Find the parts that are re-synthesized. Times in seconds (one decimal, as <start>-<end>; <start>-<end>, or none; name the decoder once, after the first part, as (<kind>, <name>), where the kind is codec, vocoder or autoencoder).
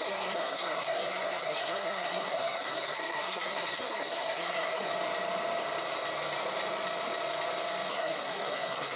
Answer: 0.0-4.9 (codec, SNAC); 7.9-9.0